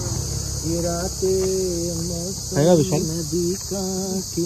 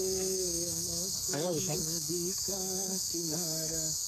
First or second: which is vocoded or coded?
second